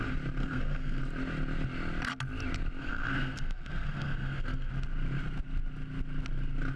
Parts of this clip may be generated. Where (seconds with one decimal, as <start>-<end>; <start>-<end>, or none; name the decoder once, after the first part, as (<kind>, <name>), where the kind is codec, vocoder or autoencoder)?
0.4-1.0 (codec, SNAC); 2.8-4.7